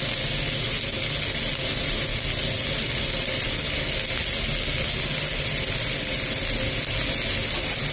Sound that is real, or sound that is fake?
real